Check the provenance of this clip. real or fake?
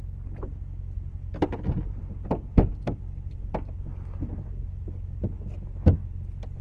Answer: real